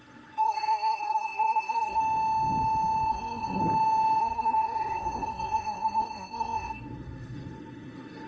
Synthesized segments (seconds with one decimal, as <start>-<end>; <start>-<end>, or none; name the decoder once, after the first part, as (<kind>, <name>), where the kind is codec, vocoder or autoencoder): 0.0-2.0 (codec, SNAC); 3.1-3.6; 4.2-8.3